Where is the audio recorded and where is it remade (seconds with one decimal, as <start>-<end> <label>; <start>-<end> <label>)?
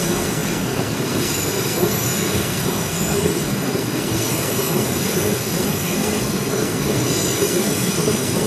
0.0-8.5 remade